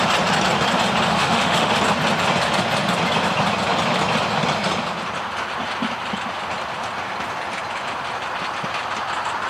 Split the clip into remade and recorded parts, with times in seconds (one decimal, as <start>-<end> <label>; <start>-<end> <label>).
0.0-1.1 recorded; 1.1-1.8 remade; 1.8-9.5 recorded